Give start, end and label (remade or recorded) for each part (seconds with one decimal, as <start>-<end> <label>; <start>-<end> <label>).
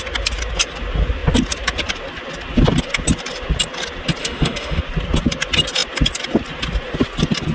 0.0-4.2 recorded; 4.2-4.8 remade; 4.8-7.5 recorded